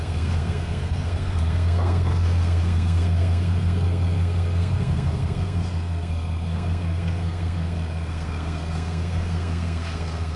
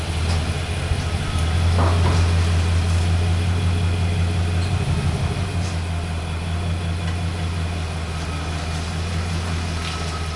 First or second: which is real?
second